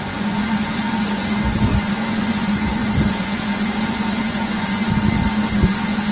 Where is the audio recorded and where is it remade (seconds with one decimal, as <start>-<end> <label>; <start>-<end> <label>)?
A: 0.0-1.7 remade; 1.7-2.2 recorded; 2.2-6.1 remade